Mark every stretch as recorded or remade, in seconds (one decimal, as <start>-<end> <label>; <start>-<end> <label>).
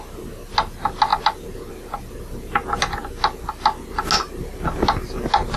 0.0-5.6 recorded